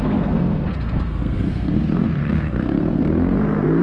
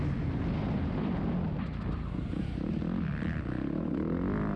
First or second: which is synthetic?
first